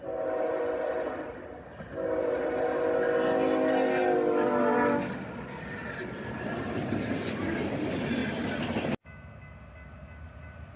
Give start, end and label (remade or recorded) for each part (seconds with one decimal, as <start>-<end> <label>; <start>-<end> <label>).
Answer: 0.0-10.8 recorded

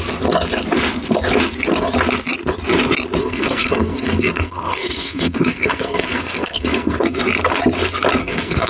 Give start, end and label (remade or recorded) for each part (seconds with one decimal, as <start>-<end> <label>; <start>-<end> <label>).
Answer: 0.0-3.2 recorded; 3.2-7.2 remade; 7.2-8.2 recorded; 8.2-8.7 remade